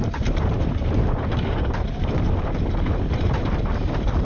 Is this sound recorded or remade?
remade